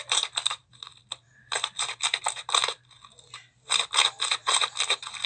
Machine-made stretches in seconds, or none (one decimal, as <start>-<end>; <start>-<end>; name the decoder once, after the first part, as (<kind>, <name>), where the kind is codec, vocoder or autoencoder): none